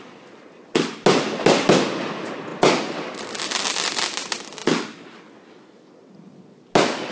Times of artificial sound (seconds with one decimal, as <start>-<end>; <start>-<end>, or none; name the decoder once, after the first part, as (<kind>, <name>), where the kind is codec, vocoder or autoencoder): none